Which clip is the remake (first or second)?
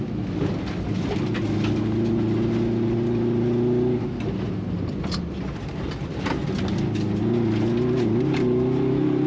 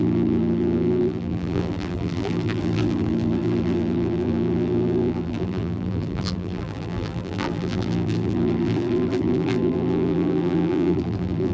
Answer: second